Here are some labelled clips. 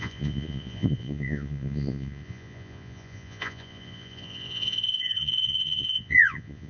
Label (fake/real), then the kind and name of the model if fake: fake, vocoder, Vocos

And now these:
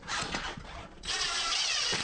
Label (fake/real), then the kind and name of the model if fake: fake, vocoder, Vocos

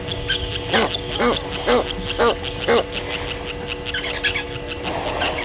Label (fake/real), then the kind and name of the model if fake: real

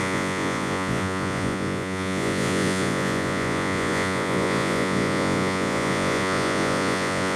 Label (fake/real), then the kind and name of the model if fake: fake, vocoder, Vocos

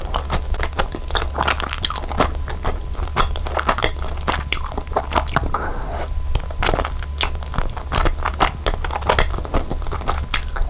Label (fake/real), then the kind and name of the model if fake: real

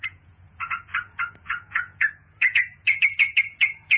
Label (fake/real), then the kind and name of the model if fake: fake, vocoder, Vocos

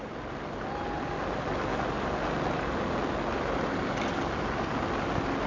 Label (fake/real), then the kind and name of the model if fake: real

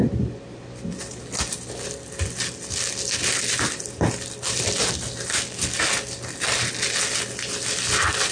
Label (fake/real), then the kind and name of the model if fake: real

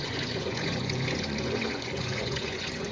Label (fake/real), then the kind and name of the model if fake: fake, vocoder, Vocos